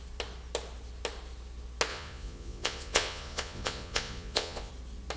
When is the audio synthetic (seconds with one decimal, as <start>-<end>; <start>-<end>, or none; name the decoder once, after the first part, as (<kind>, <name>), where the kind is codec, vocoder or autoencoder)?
1.9-4.7 (vocoder, Vocos)